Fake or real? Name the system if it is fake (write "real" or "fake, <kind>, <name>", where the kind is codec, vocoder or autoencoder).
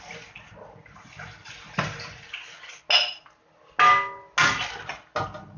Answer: real